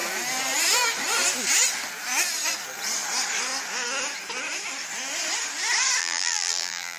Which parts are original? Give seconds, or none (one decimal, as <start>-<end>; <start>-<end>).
0.0-6.0